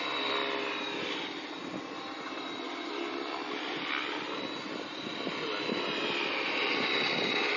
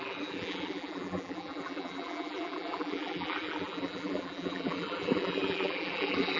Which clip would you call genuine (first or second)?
first